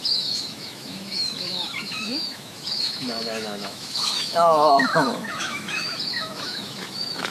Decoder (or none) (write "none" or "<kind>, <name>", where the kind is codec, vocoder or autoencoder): autoencoder, DAC-VAE